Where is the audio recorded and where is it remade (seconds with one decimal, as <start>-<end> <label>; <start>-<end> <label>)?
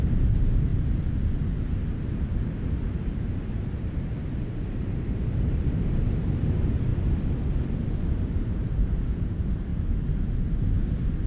0.0-0.7 remade; 0.7-1.5 recorded; 1.5-6.9 remade; 6.9-8.4 recorded; 8.4-9.7 remade; 9.7-10.8 recorded; 10.8-11.3 remade